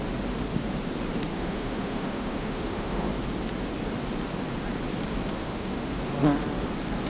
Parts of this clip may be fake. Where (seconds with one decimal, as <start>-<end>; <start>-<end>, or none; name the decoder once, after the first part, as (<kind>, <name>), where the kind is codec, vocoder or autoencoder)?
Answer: 1.3-3.1 (autoencoder, DAC-VAE); 5.4-6.0